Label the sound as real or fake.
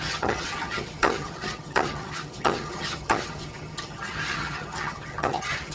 fake